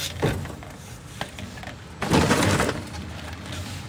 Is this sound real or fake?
real